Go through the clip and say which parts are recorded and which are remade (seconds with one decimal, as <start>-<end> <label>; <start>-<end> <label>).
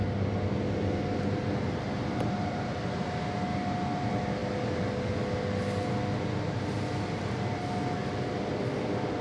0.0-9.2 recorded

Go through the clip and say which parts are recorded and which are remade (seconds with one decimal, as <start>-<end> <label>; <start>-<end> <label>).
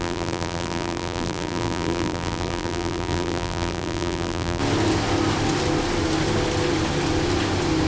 0.0-4.6 remade; 4.6-7.9 recorded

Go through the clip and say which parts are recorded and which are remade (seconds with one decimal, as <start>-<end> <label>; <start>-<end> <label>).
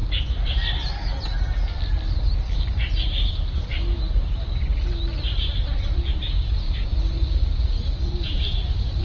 0.0-3.3 recorded; 3.3-4.6 remade; 4.6-5.6 recorded; 5.6-9.0 remade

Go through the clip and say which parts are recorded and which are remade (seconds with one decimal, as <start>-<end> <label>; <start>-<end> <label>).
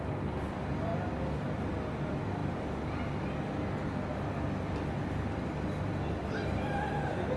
0.0-7.4 recorded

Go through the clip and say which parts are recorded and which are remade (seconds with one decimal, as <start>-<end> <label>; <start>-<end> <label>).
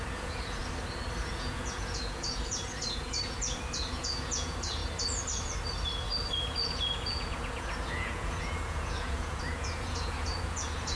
0.0-0.6 remade; 0.6-1.2 recorded; 1.2-4.8 remade; 4.8-6.4 recorded; 6.4-11.0 remade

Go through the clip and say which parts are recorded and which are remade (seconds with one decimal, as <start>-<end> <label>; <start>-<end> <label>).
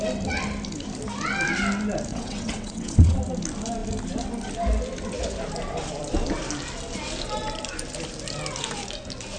0.0-2.1 recorded; 2.1-3.2 remade; 3.2-9.4 recorded